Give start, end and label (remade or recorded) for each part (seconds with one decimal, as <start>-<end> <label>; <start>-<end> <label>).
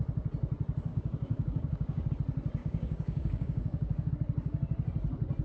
0.0-0.9 recorded; 0.9-2.1 remade; 2.1-2.6 recorded; 2.6-4.1 remade; 4.1-5.4 recorded